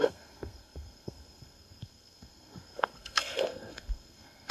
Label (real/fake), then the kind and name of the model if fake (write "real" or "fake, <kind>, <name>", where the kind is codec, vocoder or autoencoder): fake, codec, SNAC